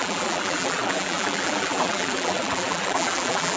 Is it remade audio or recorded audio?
remade